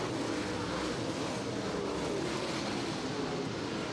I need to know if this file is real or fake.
real